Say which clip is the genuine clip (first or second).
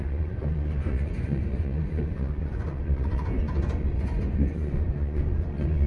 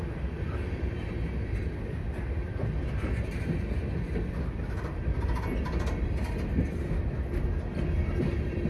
second